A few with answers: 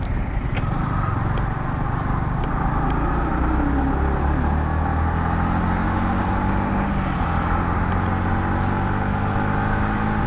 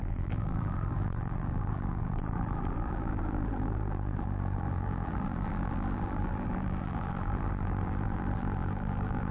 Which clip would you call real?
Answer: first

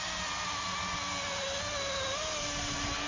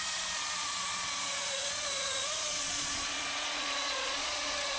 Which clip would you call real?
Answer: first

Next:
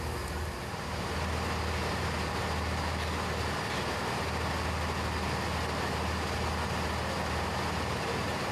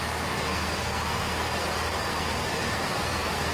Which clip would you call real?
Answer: first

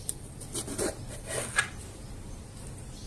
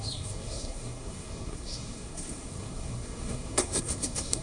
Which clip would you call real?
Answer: first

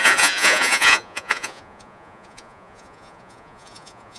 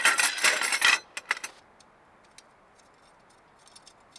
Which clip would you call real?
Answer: second